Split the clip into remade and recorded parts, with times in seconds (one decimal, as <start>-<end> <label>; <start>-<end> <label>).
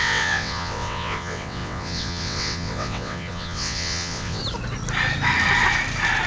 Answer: 0.0-4.4 remade; 4.4-6.3 recorded